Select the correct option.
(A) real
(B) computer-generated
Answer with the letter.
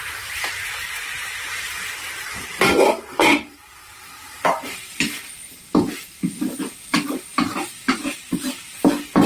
B